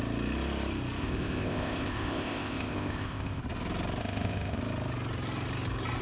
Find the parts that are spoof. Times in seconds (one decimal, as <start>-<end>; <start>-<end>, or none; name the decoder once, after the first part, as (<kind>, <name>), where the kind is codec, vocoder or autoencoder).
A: 1.0-3.4 (codec, ZipCodec); 4.0-4.6